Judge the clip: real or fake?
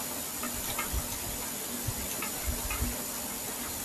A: real